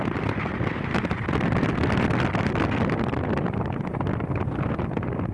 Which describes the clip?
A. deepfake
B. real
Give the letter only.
B